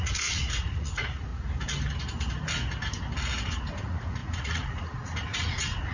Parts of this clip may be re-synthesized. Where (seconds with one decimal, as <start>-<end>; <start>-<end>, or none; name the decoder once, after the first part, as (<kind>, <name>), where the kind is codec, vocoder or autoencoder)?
0.0-1.3 (vocoder, Vocos); 3.8-5.9